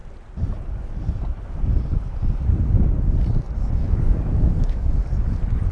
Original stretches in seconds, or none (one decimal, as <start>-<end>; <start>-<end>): 0.0-3.8; 4.9-5.7